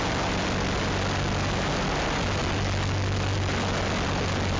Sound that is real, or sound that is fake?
real